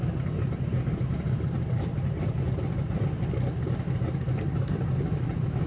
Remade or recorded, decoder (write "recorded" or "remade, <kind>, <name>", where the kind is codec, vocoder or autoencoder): remade, vocoder, BigVGAN v2